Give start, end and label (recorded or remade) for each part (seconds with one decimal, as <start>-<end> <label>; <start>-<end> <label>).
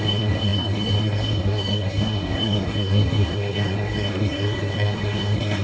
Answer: 0.0-5.6 remade